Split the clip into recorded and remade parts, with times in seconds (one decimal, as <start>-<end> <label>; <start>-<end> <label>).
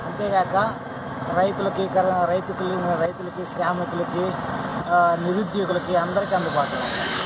0.0-1.6 remade; 1.6-6.4 recorded; 6.4-7.3 remade